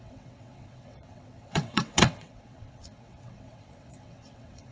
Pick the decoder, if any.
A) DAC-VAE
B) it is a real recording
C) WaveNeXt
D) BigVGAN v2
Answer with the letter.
C